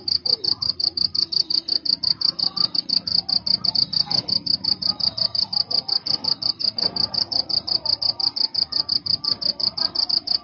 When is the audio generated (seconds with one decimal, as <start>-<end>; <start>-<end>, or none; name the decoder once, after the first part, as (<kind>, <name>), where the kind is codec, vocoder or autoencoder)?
0.0-3.1 (vocoder, BigVGAN v2); 3.7-10.4